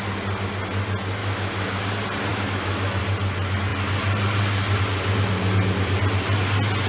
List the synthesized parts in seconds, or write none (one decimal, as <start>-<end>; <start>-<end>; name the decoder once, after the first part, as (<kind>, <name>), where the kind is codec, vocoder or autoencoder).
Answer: 1.2-1.8 (autoencoder, DAC-VAE); 2.3-3.0